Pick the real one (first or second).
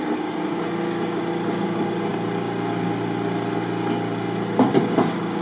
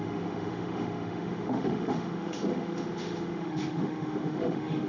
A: first